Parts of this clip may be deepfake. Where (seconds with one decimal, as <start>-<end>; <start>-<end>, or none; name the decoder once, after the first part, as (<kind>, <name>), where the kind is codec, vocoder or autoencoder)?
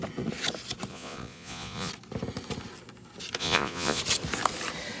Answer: 0.9-1.9 (vocoder, Vocos); 3.4-4.0